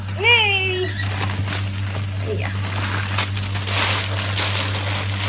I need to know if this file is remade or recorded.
recorded